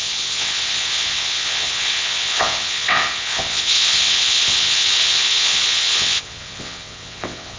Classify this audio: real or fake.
fake